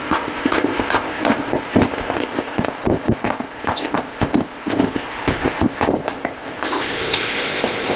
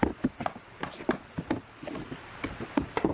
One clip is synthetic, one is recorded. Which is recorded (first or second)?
second